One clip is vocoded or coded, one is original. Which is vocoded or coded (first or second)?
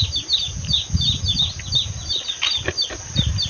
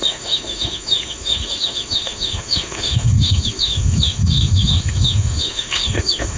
second